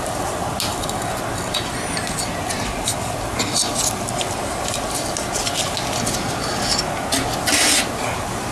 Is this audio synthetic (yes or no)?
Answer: no